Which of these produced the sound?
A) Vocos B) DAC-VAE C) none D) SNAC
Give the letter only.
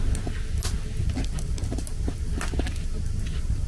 C